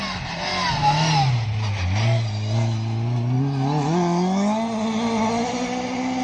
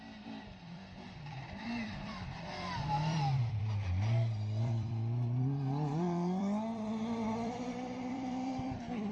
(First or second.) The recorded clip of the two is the first